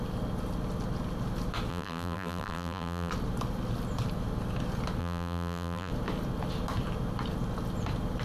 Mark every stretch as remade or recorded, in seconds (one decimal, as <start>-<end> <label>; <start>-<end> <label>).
0.0-1.7 recorded; 1.7-3.1 remade; 3.1-5.0 recorded; 5.0-5.9 remade; 5.9-8.2 recorded